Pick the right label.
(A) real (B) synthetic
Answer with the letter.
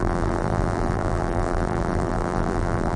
B